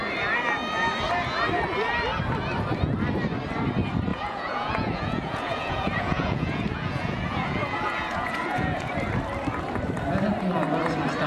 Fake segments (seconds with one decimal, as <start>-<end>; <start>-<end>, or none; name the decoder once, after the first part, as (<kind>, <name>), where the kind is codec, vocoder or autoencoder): 4.1-8.9 (vocoder, Vocos)